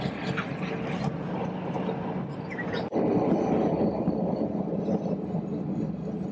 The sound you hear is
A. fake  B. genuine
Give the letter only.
B